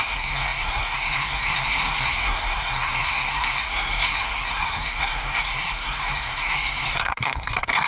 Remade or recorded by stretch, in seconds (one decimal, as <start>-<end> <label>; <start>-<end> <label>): 0.0-7.9 remade

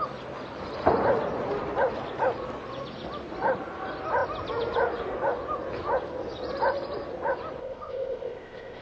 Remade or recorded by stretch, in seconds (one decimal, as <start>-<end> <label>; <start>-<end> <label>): 0.0-7.6 recorded; 7.6-8.8 remade